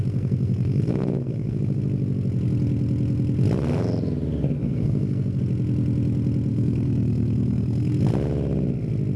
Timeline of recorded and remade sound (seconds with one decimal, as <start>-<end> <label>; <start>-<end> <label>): 0.0-1.8 remade; 1.8-4.6 recorded; 4.6-5.4 remade; 5.4-6.5 recorded; 6.5-8.0 remade; 8.0-9.2 recorded